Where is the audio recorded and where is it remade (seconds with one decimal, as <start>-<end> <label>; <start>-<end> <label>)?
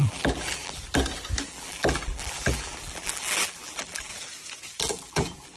0.0-0.8 remade; 0.8-1.5 recorded; 1.5-4.1 remade; 4.1-4.8 recorded; 4.8-5.6 remade